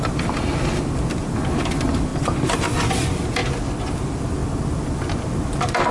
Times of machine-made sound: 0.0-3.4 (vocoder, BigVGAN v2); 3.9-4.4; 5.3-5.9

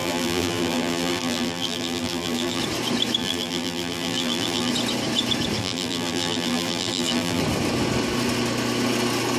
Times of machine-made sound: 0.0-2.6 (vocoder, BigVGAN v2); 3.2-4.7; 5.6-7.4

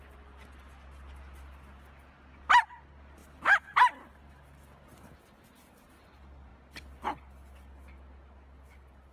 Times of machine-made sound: 3.2-3.9 (vocoder, BigVGAN v2)